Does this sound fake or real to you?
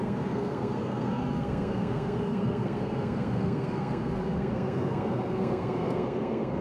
fake